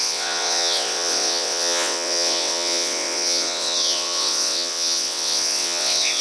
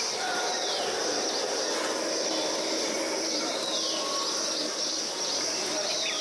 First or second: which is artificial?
first